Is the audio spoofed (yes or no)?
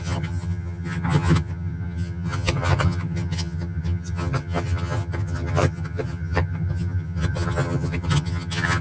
yes